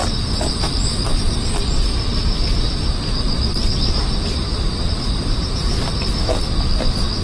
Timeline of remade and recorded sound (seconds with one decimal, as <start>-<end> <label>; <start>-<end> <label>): 0.0-7.2 recorded